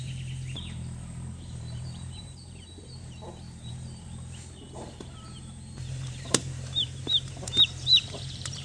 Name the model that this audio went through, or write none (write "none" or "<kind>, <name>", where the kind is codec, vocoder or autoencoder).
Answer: vocoder, BigVGAN v2